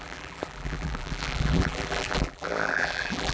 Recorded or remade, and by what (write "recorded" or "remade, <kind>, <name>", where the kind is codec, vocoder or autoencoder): remade, vocoder, BigVGAN v2